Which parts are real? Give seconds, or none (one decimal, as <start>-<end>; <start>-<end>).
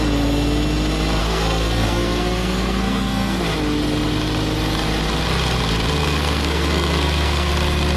0.0-1.2; 3.4-6.0; 7.5-8.0